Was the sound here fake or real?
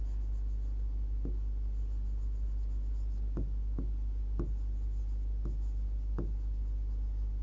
real